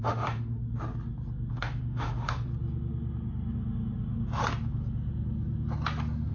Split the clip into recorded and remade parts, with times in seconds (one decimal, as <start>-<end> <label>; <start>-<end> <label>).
0.0-0.6 remade; 0.6-1.5 recorded; 1.5-2.5 remade; 2.5-6.3 recorded